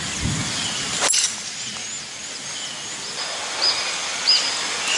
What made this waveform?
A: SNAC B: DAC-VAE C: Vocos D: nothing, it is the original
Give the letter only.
D